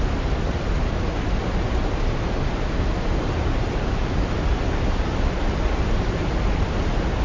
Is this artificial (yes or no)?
no